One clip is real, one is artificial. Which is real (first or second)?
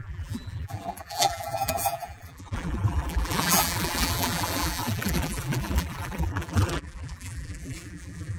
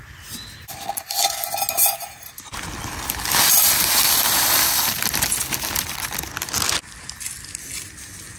second